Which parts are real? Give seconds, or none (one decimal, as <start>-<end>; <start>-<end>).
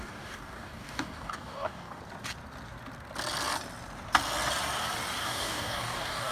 2.0-5.2